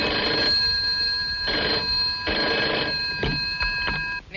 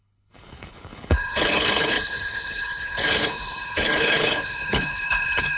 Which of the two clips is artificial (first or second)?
second